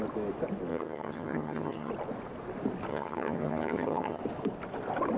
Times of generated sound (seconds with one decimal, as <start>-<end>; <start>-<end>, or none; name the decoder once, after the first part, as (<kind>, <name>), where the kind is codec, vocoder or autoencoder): 0.7-1.9 (vocoder, HiFi-GAN); 2.9-4.2